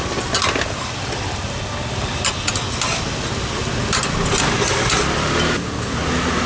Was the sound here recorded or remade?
recorded